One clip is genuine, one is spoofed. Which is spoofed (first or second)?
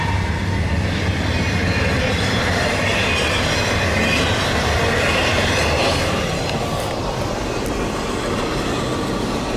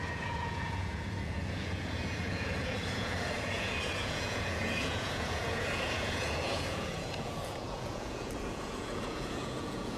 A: second